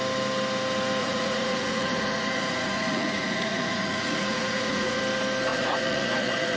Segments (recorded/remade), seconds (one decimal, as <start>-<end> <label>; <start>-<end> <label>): 0.0-1.0 recorded; 1.0-5.0 remade; 5.0-5.5 recorded; 5.5-6.6 remade